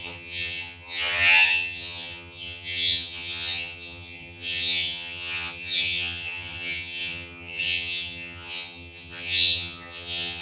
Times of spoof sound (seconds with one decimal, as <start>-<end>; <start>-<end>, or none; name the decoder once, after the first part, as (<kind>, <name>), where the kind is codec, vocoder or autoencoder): 0.0-10.4 (vocoder, HiFi-GAN)